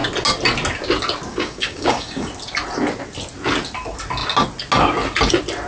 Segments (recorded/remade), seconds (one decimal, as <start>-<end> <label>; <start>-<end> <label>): 0.0-1.3 recorded; 1.3-2.3 remade; 2.3-5.7 recorded